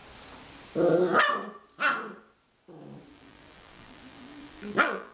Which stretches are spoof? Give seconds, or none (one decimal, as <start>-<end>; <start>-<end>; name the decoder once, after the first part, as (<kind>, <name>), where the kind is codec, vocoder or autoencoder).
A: 3.1-5.1 (vocoder, BigVGAN v2)